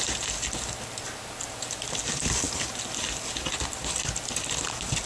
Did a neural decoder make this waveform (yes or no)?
no